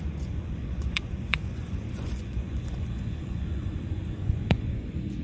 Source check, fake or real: fake